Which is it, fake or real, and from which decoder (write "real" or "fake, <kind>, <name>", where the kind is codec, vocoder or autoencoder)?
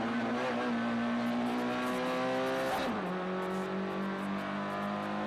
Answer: real